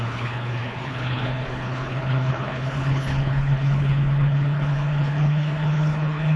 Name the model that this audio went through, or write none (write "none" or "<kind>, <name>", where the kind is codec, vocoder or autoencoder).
codec, HILCodec